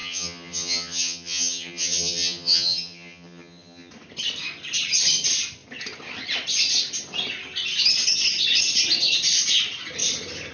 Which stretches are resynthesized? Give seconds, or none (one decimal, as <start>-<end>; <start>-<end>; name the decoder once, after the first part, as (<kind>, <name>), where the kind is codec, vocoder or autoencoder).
0.0-3.9 (vocoder, HiFi-GAN)